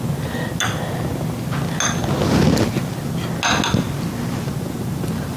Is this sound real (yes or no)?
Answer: yes